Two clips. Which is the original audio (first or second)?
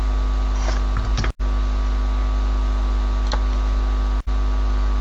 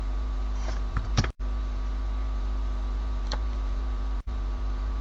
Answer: first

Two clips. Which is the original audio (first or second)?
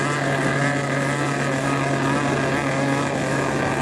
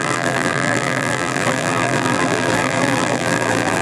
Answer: first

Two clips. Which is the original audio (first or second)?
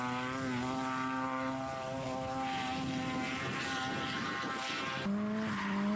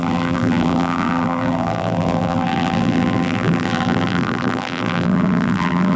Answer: first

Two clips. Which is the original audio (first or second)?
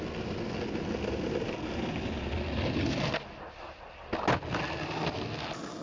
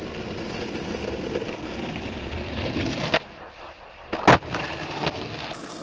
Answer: first